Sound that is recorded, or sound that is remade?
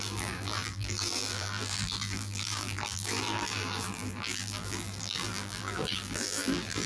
remade